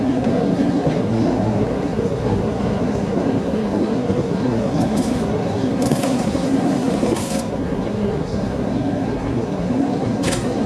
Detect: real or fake fake